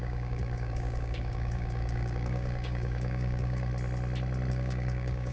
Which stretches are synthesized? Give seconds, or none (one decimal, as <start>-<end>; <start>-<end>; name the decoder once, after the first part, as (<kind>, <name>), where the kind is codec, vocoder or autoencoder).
0.0-3.7 (codec, DAC); 4.5-5.3